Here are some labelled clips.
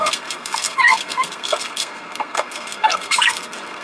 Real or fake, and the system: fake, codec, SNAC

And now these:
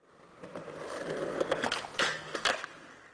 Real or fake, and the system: real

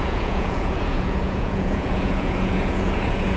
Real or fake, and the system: fake, vocoder, Vocos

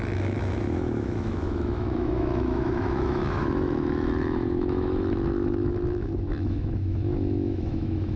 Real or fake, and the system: fake, autoencoder, DAC-VAE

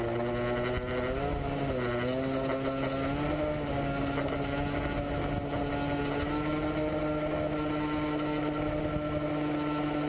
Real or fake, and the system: real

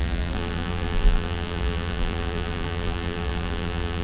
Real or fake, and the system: fake, vocoder, BigVGAN v2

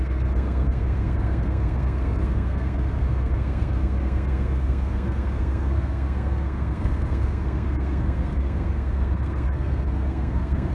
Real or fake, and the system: fake, codec, SNAC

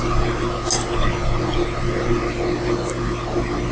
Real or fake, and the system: real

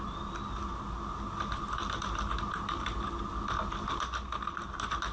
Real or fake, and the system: real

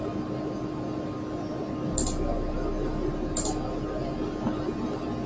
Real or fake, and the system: real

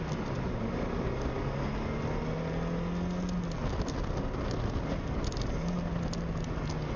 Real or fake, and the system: real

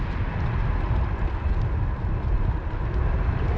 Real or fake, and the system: real